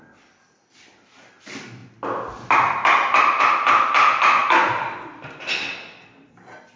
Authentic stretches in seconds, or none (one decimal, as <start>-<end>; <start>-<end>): 1.8-3.4; 4.4-5.7